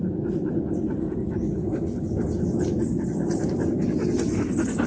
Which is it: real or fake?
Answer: real